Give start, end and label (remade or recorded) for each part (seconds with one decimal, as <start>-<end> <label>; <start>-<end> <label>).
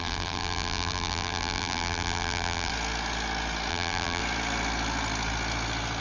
0.0-2.7 remade; 2.7-3.7 recorded; 3.7-4.2 remade; 4.2-6.0 recorded